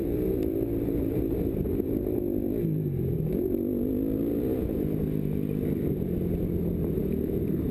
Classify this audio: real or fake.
real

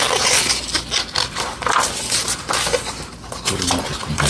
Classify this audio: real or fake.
fake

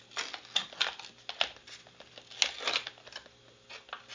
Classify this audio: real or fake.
real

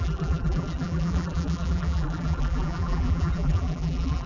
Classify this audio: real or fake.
fake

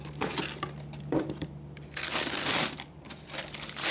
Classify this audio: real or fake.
fake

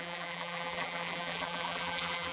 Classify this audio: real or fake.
fake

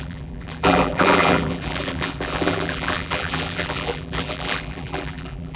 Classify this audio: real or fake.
fake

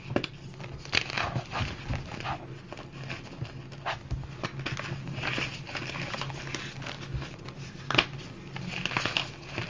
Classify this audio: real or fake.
real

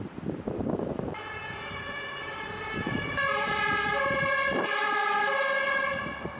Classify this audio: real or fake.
fake